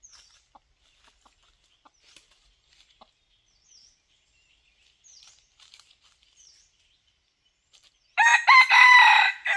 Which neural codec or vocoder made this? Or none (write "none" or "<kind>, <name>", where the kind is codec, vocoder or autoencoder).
none